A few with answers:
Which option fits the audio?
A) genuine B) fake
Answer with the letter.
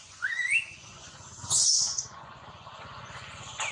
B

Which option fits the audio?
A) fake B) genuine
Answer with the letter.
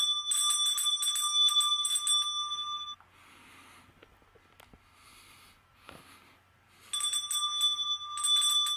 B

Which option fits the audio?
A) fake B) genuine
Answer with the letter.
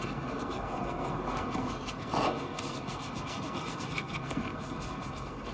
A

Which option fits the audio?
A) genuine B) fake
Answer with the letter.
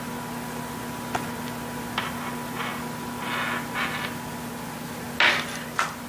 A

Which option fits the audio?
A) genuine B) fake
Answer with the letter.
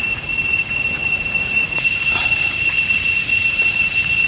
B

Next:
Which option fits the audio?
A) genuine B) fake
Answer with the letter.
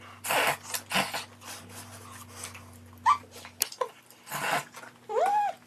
A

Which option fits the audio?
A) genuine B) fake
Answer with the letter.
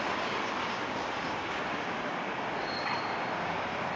B